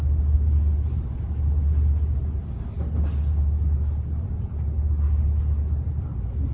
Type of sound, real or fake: real